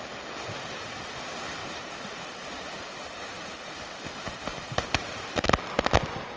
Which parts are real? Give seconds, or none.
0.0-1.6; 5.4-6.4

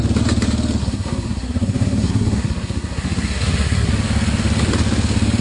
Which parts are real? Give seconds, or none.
0.0-0.8; 3.9-5.4

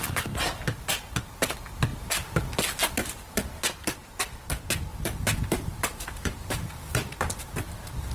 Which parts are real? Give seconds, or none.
0.0-4.9; 7.1-8.1

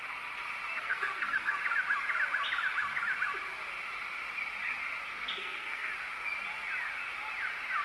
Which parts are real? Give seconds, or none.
0.0-0.8; 1.6-5.1; 5.9-7.8

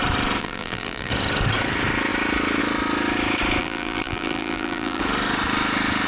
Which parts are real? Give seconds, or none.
0.0-0.4; 1.1-3.6; 5.0-6.1